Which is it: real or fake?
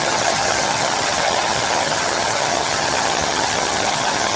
fake